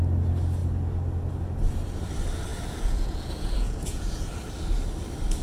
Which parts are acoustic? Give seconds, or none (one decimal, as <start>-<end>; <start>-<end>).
0.0-2.5; 4.3-5.4